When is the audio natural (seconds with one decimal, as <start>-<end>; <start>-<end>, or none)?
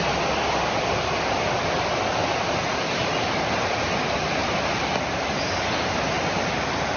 0.0-2.2; 3.6-4.4; 5.1-7.0